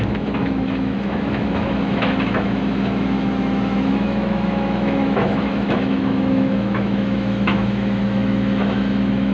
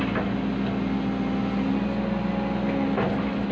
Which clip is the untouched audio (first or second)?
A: second